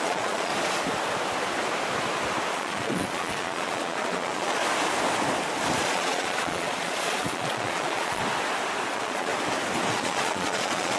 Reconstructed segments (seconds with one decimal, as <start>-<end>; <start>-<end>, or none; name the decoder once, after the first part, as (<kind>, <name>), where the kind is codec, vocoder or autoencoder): 0.0-0.5 (vocoder, Vocos); 2.5-4.6; 5.8-8.2; 8.9-9.3; 9.9-11.0